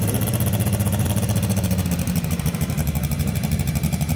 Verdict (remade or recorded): remade